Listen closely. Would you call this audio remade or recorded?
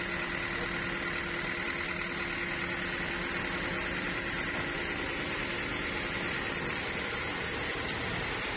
recorded